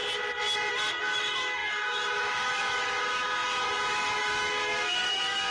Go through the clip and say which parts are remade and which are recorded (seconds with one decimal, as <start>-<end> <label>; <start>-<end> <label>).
0.0-1.0 recorded; 1.0-5.5 remade